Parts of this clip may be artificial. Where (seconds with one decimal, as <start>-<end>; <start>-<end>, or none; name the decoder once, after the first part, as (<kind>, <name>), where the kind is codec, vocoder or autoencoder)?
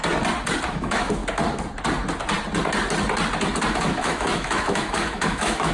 0.7-1.2 (autoencoder, DAC-VAE); 3.7-5.7